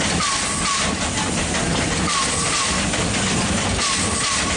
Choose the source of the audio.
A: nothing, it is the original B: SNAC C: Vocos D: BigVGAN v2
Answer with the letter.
A